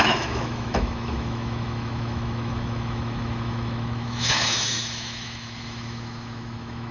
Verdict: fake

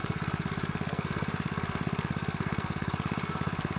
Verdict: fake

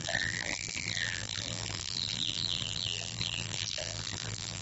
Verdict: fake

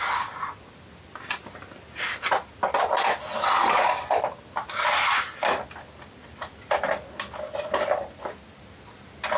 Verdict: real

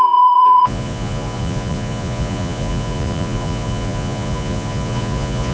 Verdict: fake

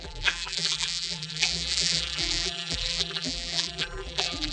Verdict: fake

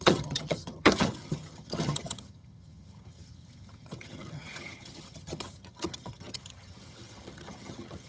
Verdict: fake